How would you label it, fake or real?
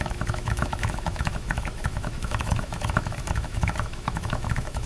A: fake